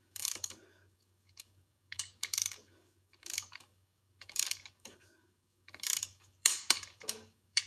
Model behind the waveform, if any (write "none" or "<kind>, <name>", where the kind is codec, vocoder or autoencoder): codec, DAC